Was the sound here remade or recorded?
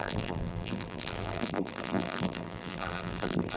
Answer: remade